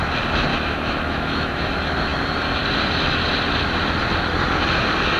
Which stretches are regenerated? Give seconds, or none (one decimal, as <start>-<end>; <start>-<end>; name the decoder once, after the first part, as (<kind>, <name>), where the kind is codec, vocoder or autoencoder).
0.5-1.7 (autoencoder, DAC-VAE)